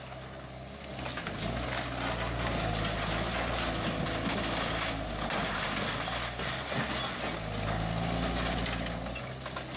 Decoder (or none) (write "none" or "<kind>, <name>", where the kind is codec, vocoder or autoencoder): none